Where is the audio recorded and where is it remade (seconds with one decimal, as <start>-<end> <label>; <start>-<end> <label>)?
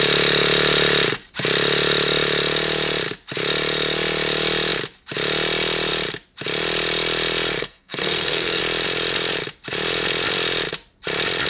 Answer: 0.0-7.6 recorded; 7.6-8.6 remade; 8.6-11.5 recorded